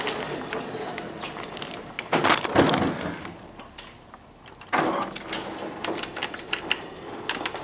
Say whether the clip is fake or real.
real